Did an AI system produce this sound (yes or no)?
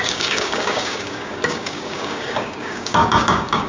yes